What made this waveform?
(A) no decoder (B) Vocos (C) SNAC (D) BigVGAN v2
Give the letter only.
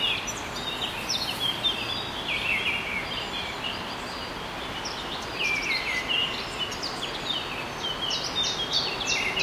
A